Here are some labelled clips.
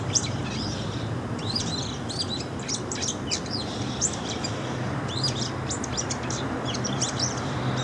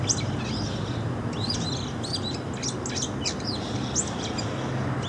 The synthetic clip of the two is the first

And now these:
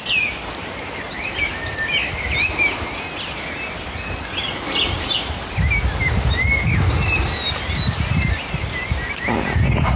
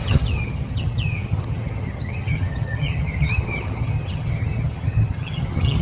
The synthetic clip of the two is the second